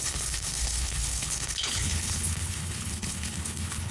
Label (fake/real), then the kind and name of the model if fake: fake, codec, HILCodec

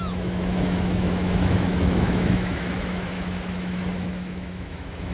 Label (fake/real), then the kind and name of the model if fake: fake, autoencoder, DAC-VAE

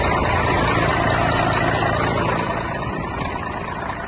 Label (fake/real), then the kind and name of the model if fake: real